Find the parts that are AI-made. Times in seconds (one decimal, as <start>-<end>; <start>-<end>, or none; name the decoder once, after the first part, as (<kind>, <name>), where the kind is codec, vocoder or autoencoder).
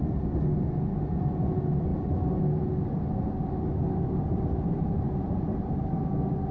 4.3-6.0 (vocoder, BigVGAN v2)